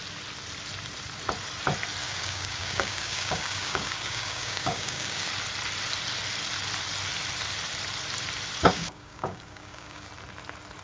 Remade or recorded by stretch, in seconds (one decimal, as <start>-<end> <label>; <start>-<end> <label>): 0.0-2.0 recorded; 2.0-5.3 remade; 5.3-8.6 recorded; 8.6-10.1 remade; 10.1-10.8 recorded